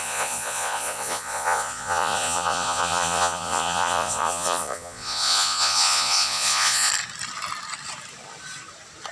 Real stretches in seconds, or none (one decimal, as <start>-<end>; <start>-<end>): 6.9-9.1